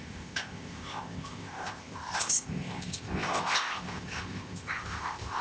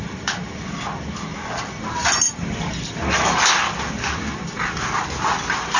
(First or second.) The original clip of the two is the second